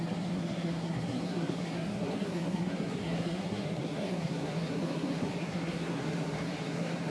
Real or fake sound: fake